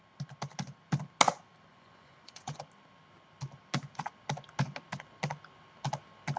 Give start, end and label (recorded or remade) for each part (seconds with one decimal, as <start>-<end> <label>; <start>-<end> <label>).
0.0-1.7 recorded; 1.7-2.6 remade; 2.6-6.4 recorded